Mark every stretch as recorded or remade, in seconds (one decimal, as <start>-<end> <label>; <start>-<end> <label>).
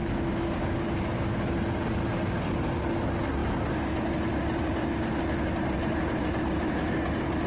0.0-1.4 remade; 1.4-7.5 recorded